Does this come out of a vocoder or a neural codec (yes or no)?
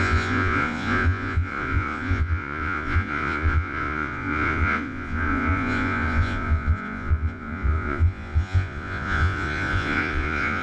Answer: yes